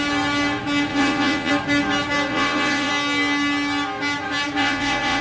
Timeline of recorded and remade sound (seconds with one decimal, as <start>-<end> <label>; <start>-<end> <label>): 0.0-0.9 recorded; 0.9-1.5 remade; 1.5-2.3 recorded; 2.3-2.9 remade; 2.9-4.6 recorded; 4.6-5.2 remade

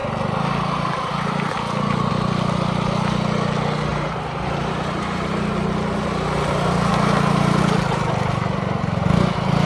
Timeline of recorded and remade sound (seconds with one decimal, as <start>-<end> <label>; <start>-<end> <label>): 0.0-3.9 recorded; 3.9-5.3 remade; 5.3-6.9 recorded; 6.9-7.6 remade; 7.6-9.7 recorded

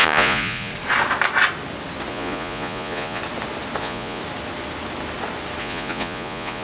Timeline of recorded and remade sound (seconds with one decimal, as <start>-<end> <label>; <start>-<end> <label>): 0.0-0.7 remade; 0.7-2.1 recorded; 2.1-3.2 remade; 3.2-3.8 recorded; 3.8-4.2 remade; 4.2-5.6 recorded; 5.6-6.6 remade

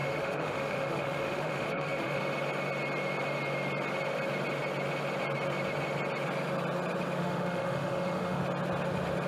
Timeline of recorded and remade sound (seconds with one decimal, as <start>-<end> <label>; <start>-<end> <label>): 0.0-2.2 remade; 2.2-7.2 recorded; 7.2-8.4 remade; 8.4-9.3 recorded

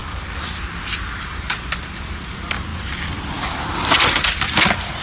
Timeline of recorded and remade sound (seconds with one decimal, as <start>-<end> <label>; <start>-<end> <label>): 0.0-5.0 recorded

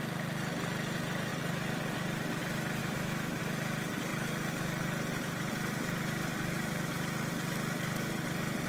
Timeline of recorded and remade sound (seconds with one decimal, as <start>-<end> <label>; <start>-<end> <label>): 0.0-2.8 recorded; 2.8-3.4 remade; 3.4-8.7 recorded